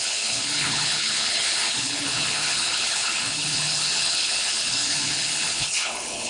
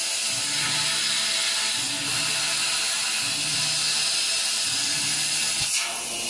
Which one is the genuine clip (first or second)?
second